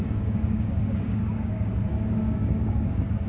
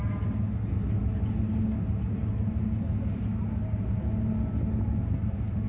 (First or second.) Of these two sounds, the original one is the second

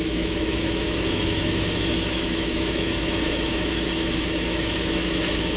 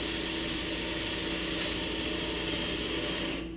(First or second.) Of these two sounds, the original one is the second